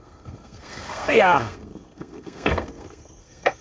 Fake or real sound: fake